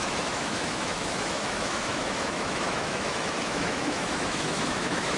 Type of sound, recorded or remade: remade